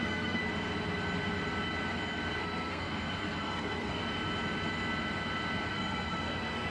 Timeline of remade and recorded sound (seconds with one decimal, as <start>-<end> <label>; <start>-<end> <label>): 0.0-0.4 remade; 0.4-2.4 recorded; 2.4-4.0 remade; 4.0-5.7 recorded; 5.7-6.7 remade